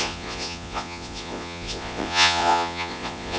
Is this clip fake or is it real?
fake